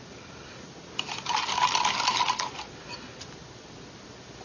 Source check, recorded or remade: recorded